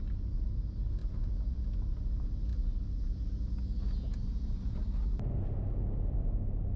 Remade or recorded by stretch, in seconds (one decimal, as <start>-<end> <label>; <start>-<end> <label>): 0.0-1.0 recorded; 1.0-1.6 remade; 1.6-6.8 recorded